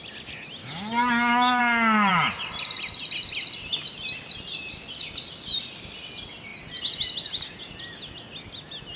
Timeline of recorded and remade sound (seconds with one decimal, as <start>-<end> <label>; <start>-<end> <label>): 0.0-0.6 recorded; 0.6-1.6 remade; 1.6-9.0 recorded